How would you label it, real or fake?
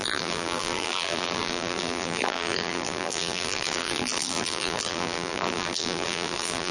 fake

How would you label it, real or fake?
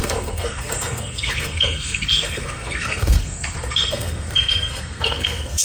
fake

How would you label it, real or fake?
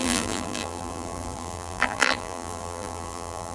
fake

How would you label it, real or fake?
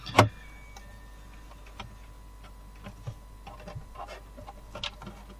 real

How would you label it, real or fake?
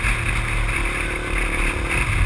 real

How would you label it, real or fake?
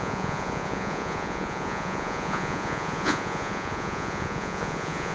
fake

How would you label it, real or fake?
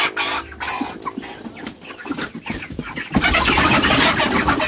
real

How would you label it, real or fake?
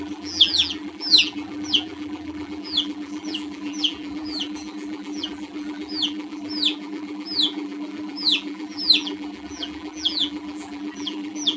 fake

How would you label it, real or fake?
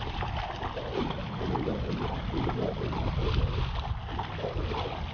real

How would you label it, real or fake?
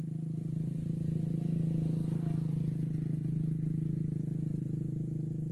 real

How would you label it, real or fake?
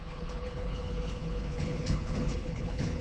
fake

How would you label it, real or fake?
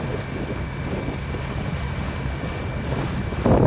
real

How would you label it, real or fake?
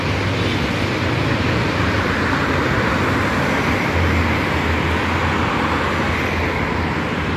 real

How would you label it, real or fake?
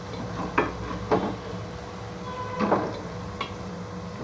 real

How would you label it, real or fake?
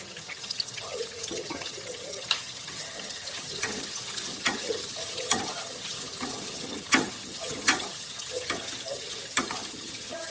fake